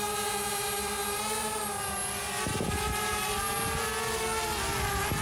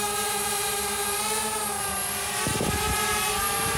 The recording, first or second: first